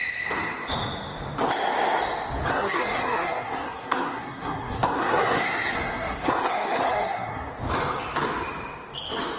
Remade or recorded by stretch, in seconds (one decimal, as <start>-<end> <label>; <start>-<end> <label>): 0.0-2.5 recorded; 2.5-7.5 remade; 7.5-9.4 recorded